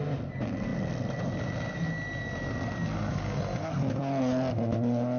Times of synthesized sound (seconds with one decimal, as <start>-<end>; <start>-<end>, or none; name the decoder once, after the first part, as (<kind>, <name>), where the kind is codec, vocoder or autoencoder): none